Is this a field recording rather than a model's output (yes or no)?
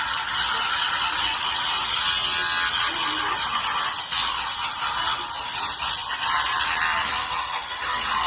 yes